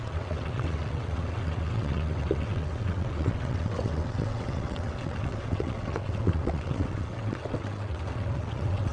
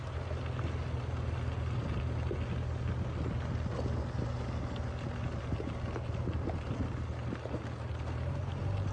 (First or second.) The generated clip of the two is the first